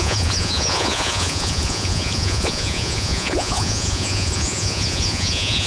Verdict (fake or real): fake